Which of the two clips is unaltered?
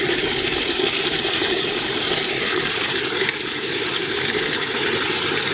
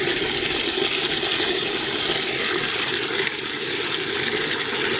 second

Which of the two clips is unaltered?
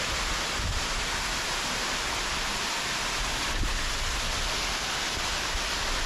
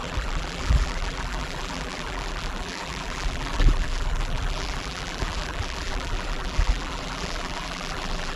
first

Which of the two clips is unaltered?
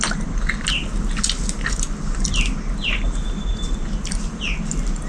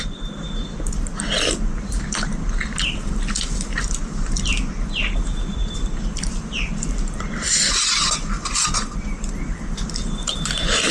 first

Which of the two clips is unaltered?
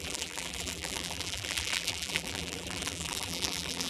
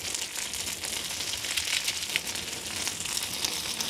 second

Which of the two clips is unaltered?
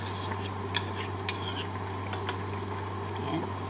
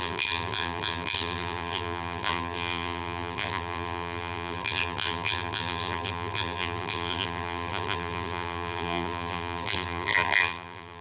first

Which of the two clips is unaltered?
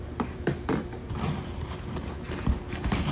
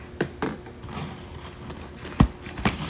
second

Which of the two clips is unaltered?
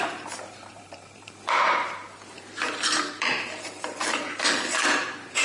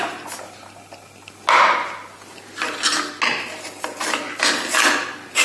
second